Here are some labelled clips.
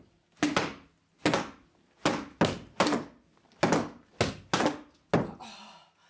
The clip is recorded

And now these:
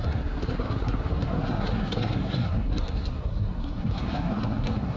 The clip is remade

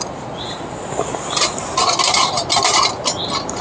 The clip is recorded